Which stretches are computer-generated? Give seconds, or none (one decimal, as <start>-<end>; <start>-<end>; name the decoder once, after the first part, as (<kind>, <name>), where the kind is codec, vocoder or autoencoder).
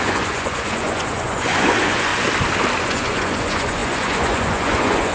0.0-2.1 (vocoder, Vocos); 2.8-5.1